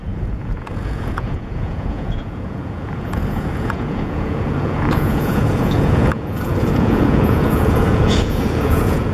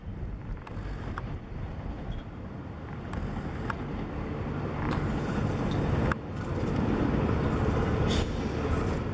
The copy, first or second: first